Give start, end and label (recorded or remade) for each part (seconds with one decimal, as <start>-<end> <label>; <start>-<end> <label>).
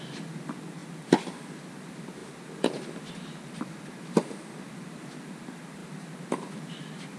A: 0.0-7.2 recorded